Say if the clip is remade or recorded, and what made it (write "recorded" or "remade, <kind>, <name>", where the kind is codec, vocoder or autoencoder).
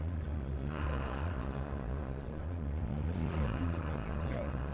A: remade, vocoder, Vocos